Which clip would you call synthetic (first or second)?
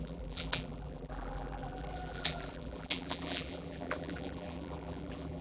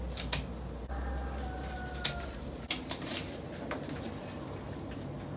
first